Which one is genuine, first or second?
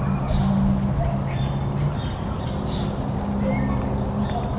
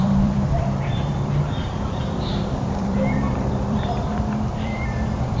first